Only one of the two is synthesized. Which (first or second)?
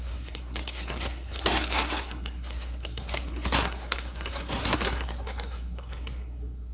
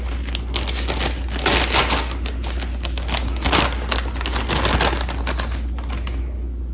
first